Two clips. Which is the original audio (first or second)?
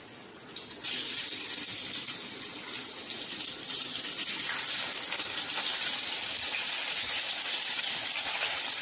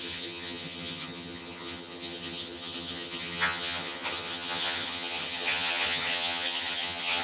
first